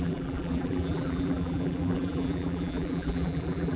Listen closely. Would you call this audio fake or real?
fake